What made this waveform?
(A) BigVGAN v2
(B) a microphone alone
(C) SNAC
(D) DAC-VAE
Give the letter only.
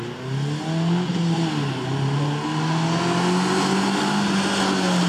B